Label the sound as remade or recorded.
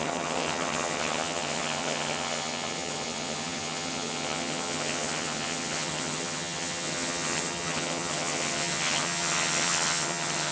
remade